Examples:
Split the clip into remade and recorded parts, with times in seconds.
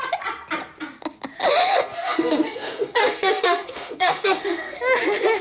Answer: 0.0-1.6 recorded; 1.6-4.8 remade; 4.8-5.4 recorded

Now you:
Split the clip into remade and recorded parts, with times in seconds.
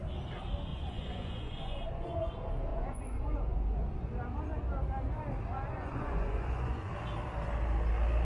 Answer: 0.0-0.7 recorded; 0.7-2.3 remade; 2.3-2.7 recorded; 2.7-4.1 remade; 4.1-5.7 recorded; 5.7-6.9 remade; 6.9-8.2 recorded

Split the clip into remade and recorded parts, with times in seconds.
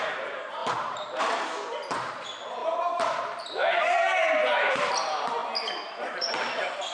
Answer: 0.0-0.6 recorded; 0.6-1.2 remade; 1.2-2.6 recorded; 2.6-4.9 remade; 4.9-6.9 recorded